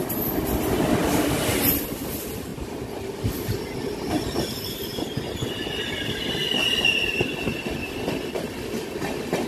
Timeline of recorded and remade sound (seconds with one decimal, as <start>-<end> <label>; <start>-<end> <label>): 0.0-9.5 recorded